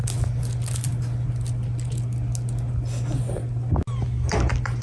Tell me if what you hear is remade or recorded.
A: recorded